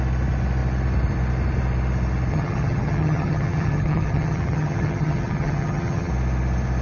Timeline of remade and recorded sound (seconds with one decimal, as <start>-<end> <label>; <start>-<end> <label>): 0.0-2.3 recorded; 2.3-6.1 remade; 6.1-6.8 recorded